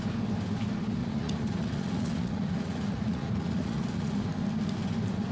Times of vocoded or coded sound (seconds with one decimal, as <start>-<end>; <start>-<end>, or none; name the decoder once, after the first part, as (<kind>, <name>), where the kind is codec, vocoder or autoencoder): 1.0-4.2 (vocoder, Vocos)